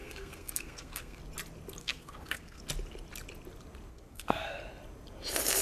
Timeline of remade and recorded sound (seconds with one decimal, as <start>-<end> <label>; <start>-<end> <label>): 0.0-1.2 remade; 1.2-1.8 recorded; 1.8-2.6 remade; 2.6-3.9 recorded; 3.9-4.6 remade; 4.6-5.6 recorded